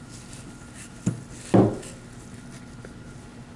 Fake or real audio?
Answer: real